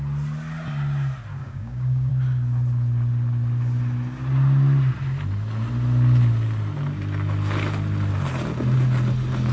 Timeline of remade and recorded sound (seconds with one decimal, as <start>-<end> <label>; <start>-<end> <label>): 0.0-1.4 recorded; 1.4-2.1 remade; 2.1-9.5 recorded